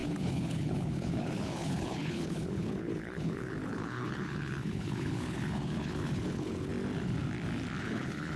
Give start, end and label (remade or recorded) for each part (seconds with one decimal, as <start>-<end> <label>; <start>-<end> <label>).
0.0-6.7 remade; 6.7-7.8 recorded; 7.8-8.4 remade